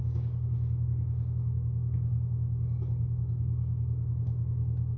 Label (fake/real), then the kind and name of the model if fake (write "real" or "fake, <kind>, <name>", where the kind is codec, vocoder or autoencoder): fake, codec, DAC